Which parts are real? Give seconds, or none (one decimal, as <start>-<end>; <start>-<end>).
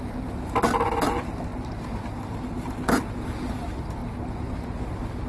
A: 0.0-5.3